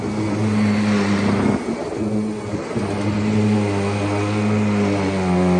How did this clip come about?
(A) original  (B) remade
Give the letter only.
A